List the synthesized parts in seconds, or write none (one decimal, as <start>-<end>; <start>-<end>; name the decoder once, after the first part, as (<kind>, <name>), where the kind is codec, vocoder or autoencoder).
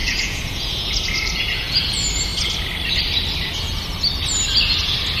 0.0-1.9 (vocoder, Vocos)